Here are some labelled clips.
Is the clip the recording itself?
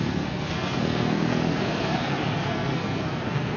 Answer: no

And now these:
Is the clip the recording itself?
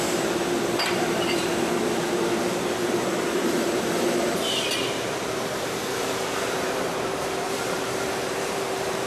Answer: no